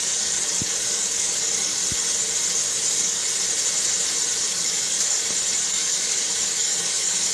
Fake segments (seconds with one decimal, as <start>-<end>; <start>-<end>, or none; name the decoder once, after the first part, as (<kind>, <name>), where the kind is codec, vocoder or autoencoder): 0.0-1.8 (codec, DAC); 2.7-3.2; 4.5-5.2; 5.7-7.3

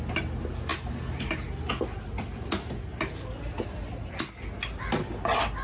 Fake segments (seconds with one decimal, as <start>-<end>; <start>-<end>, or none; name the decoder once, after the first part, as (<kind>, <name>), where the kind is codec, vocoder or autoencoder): none

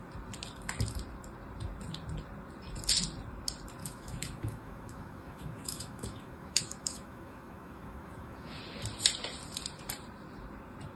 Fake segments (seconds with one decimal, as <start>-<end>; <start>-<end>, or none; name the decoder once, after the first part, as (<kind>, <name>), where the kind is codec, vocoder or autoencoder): 3.8-8.6 (autoencoder, DAC-VAE)

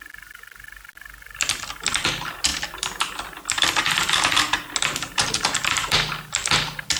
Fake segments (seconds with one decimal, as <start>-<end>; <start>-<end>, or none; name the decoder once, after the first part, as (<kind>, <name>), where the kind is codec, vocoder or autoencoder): none

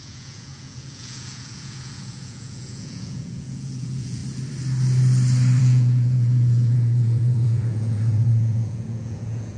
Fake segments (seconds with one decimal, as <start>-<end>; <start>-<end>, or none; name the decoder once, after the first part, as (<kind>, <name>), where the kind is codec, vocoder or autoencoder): 0.0-4.2 (vocoder, Vocos); 5.6-9.6